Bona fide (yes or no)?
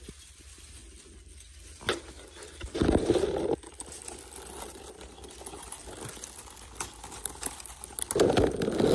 yes